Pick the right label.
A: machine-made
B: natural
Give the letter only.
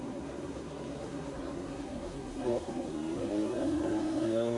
A